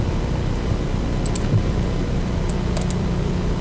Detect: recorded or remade recorded